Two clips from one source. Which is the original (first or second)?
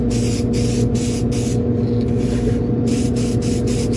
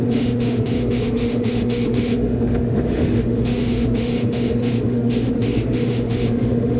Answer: first